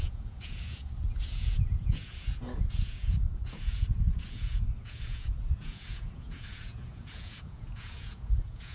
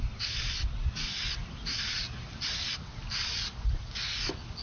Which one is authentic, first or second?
second